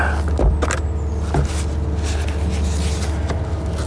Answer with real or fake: real